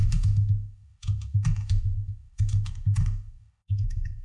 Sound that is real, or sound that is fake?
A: fake